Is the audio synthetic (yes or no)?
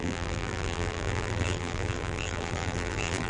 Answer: yes